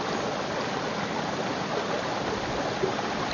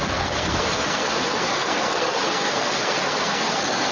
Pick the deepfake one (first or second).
second